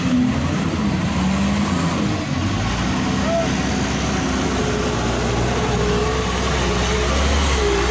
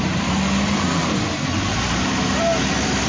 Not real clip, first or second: second